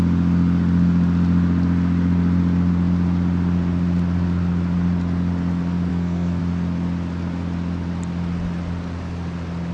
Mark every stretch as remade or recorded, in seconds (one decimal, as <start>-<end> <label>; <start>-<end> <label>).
0.0-5.9 recorded; 5.9-6.4 remade; 6.4-9.7 recorded